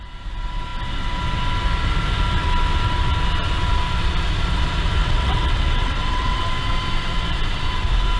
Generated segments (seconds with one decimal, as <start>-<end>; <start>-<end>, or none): 5.0-6.4